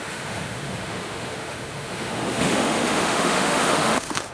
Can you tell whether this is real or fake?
fake